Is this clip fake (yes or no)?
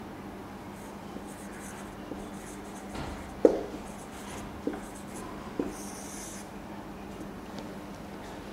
no